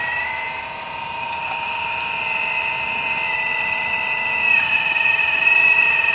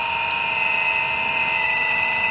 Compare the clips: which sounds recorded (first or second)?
second